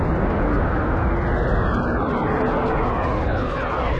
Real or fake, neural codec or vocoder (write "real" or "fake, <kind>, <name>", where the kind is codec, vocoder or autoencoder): real